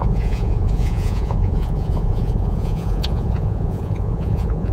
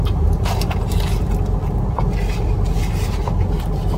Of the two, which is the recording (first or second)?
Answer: second